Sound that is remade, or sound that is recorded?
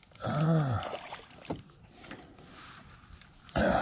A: recorded